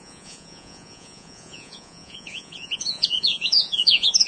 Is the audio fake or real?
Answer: fake